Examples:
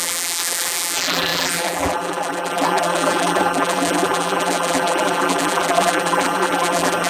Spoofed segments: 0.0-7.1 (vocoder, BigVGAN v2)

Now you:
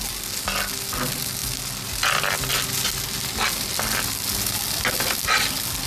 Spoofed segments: none

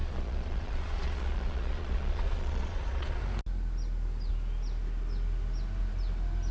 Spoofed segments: 0.0-3.2 (vocoder, Vocos)

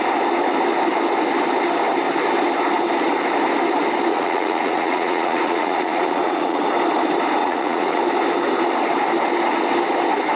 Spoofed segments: 4.1-6.6 (vocoder, Vocos); 7.4-8.0